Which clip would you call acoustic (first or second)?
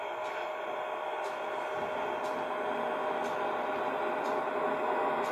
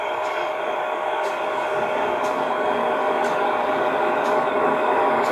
first